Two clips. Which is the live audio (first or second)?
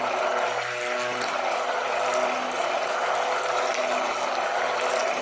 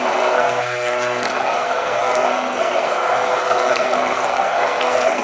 first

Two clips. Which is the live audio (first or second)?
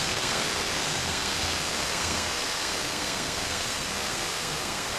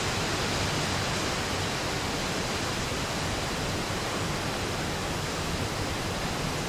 second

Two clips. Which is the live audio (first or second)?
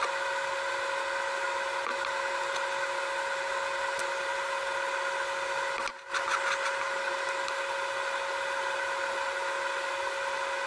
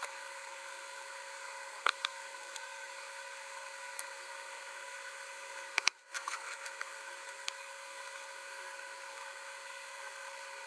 first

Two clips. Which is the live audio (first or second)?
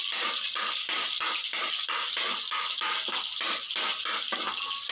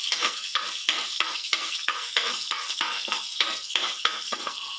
first